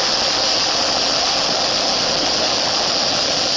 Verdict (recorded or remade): recorded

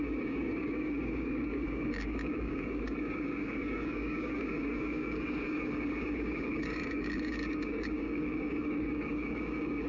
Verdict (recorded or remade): remade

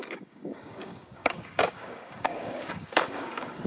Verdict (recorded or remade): remade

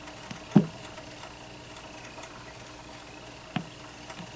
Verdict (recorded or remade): recorded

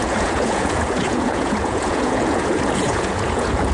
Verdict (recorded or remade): remade